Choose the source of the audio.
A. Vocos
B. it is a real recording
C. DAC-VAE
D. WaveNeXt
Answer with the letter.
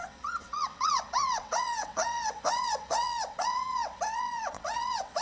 D